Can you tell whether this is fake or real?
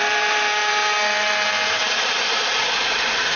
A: fake